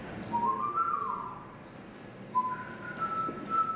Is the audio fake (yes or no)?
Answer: no